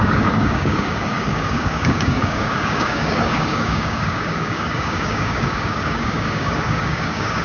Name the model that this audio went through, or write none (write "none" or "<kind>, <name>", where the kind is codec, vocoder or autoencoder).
codec, DAC